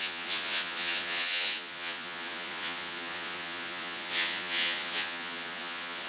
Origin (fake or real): fake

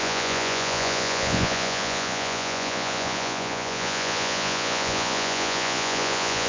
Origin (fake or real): fake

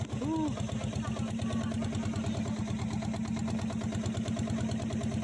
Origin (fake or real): real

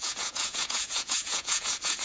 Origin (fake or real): fake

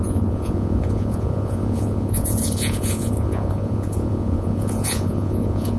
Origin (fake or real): fake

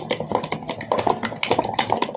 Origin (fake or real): real